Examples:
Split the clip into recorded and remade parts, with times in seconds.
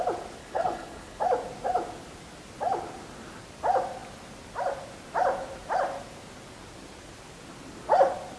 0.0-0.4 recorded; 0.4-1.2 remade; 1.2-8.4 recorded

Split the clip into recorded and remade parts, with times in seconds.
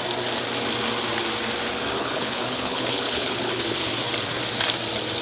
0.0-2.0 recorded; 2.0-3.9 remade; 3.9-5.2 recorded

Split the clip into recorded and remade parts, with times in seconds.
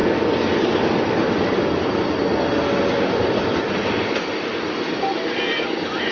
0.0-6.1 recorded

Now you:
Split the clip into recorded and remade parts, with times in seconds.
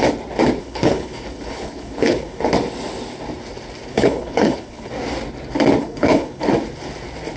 0.0-0.6 recorded; 0.6-2.5 remade; 2.5-3.9 recorded; 3.9-4.9 remade; 4.9-5.8 recorded; 5.8-6.5 remade; 6.5-7.4 recorded